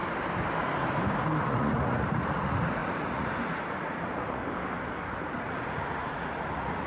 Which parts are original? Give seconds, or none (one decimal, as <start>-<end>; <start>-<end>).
0.0-1.4; 4.4-5.2